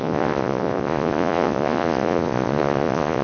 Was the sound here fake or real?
fake